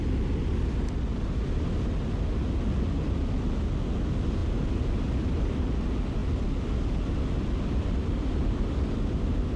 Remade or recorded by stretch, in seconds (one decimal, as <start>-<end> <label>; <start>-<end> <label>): 0.0-9.6 recorded